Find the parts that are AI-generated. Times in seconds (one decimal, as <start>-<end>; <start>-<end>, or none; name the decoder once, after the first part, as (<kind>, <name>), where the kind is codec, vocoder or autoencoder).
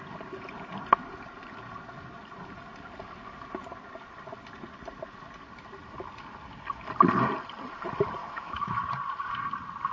8.2-8.9 (autoencoder, DAC-VAE)